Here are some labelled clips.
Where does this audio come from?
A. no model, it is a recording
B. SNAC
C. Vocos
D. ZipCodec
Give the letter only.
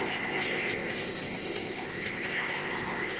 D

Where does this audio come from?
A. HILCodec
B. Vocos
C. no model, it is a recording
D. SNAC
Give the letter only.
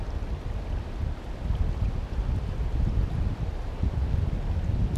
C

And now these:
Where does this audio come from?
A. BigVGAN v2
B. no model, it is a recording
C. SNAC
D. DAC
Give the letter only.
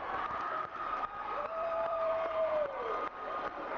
A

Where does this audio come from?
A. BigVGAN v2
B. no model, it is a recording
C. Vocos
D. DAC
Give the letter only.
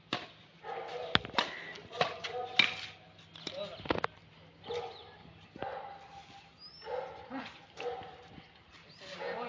B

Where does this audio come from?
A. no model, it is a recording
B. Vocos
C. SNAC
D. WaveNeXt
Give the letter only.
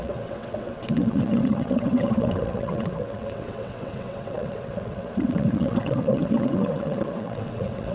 D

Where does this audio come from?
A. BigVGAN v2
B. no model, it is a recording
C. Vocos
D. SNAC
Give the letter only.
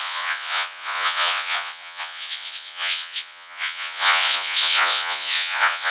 C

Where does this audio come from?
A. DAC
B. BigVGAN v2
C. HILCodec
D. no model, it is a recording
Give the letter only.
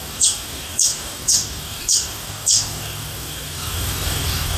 A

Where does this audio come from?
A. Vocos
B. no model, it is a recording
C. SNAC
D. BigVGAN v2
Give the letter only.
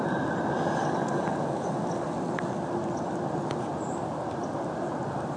B